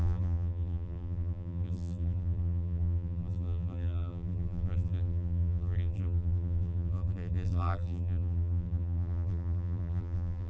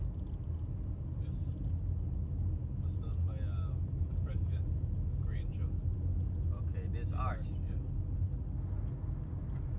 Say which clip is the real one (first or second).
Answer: second